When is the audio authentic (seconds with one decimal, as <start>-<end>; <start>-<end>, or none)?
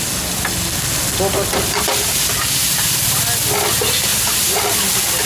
0.0-2.6; 3.2-4.1; 4.6-5.3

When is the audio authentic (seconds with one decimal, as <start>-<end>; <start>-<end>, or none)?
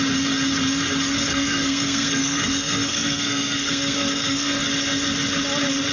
0.0-1.3; 4.6-5.9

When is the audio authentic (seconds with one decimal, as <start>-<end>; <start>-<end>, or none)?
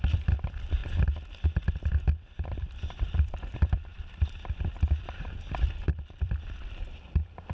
0.8-1.9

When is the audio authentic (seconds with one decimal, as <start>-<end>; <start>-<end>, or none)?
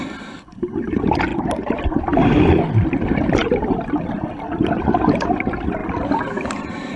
0.0-7.0